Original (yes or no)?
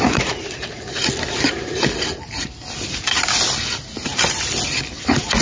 yes